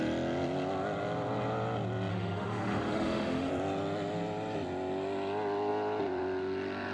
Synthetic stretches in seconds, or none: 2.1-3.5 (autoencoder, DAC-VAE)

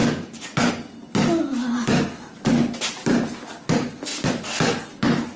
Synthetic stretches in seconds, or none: none

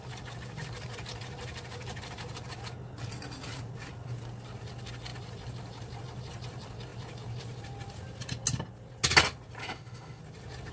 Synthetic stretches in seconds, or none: 9.6-10.2 (autoencoder, DAC-VAE)

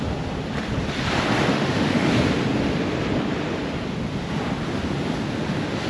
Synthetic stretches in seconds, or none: 1.5-2.1 (autoencoder, DAC-VAE)

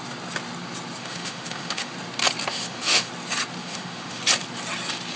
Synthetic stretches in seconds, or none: 1.0-1.9 (autoencoder, DAC-VAE); 2.5-3.1; 3.6-4.2